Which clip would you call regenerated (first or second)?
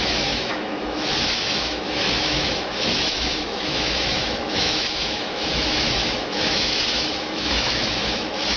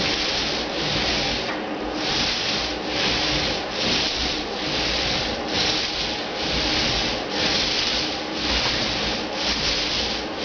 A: first